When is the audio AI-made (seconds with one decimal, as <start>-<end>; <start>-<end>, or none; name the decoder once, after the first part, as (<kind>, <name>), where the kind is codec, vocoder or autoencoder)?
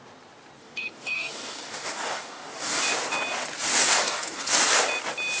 0.6-2.8 (codec, DAC); 3.8-4.6